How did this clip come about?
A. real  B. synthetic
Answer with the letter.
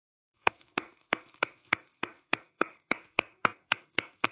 B